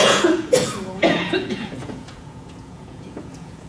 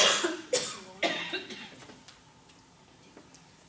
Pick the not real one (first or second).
first